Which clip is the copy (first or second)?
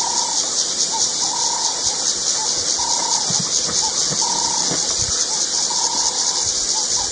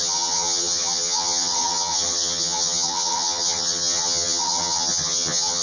second